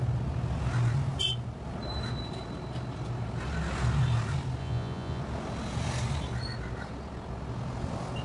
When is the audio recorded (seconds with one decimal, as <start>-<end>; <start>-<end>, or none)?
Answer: 0.0-4.6; 5.2-8.2